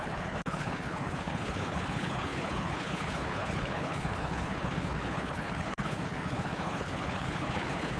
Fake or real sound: fake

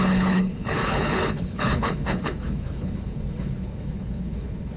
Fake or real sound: fake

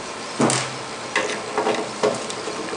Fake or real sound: real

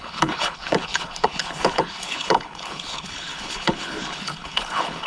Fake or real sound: fake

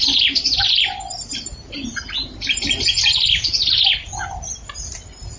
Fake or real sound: real